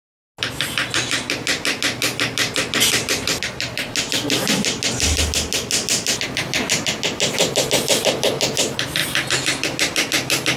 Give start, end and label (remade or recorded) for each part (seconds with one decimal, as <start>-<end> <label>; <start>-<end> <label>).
0.0-10.6 recorded